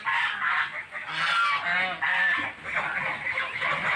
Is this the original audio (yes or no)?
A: yes